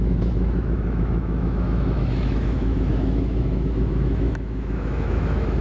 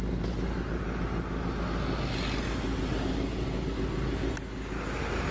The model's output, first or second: first